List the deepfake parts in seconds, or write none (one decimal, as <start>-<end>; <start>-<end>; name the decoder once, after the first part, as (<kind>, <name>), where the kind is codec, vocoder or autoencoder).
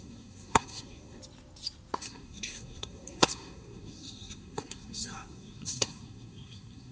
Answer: 0.0-1.2 (codec, SNAC); 2.0-6.9